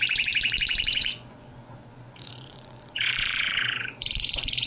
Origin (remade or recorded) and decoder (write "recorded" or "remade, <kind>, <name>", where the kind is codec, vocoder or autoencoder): remade, vocoder, Vocos